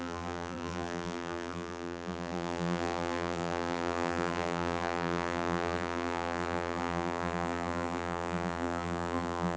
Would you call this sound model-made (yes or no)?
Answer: yes